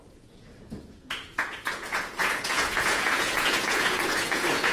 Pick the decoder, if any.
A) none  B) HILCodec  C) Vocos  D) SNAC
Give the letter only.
C